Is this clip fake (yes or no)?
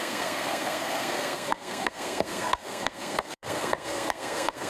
yes